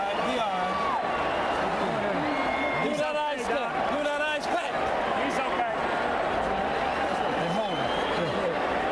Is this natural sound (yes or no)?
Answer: yes